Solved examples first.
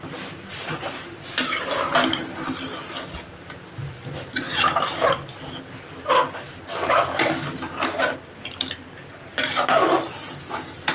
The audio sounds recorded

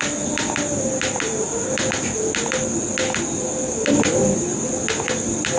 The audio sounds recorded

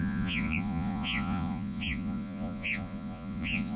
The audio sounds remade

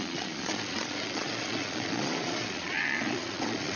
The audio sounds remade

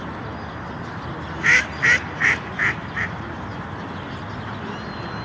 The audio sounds recorded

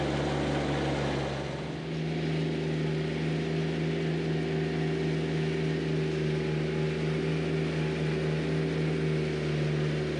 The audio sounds recorded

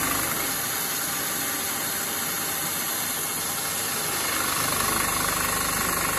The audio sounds recorded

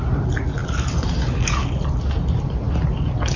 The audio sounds recorded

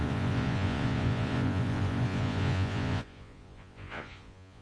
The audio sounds remade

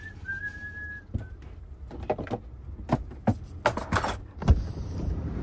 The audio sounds recorded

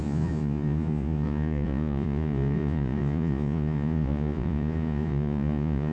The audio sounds remade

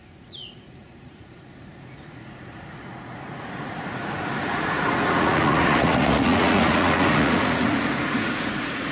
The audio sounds remade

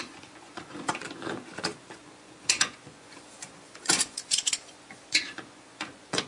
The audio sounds remade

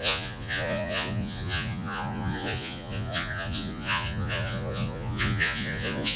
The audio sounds remade